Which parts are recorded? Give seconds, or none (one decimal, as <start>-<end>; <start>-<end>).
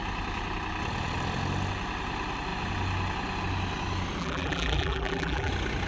0.0-4.2; 5.5-5.9